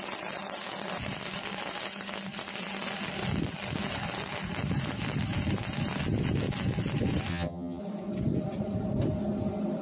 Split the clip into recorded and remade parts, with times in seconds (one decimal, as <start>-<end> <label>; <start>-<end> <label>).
0.0-7.3 recorded; 7.3-7.8 remade; 7.8-9.8 recorded